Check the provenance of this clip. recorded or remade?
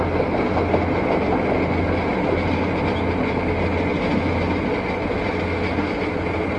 recorded